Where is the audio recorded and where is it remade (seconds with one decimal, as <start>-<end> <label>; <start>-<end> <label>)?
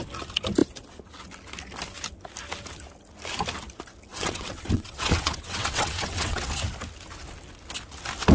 0.0-4.1 recorded; 4.1-6.5 remade; 6.5-8.3 recorded